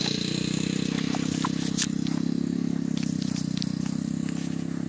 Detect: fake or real real